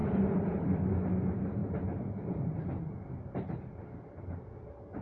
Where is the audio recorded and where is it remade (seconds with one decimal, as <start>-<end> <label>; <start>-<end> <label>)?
0.0-5.0 recorded